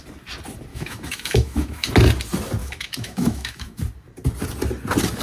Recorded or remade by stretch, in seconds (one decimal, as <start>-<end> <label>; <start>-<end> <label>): 0.0-0.7 recorded; 0.7-1.9 remade; 1.9-2.6 recorded; 2.6-3.8 remade; 3.8-5.2 recorded